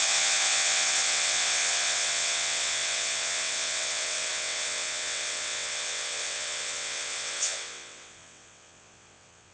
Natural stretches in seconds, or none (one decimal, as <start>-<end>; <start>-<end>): none